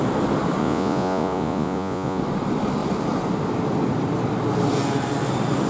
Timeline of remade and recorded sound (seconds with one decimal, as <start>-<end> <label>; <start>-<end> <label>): 0.0-0.6 recorded; 0.6-2.2 remade; 2.2-5.7 recorded